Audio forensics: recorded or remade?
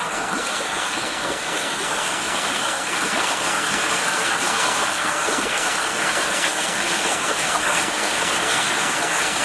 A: remade